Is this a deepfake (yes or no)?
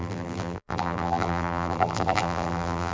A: yes